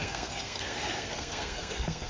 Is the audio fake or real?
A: fake